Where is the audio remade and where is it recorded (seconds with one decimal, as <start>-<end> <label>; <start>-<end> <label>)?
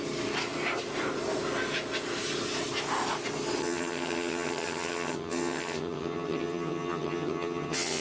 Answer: 0.0-3.6 recorded; 3.6-8.0 remade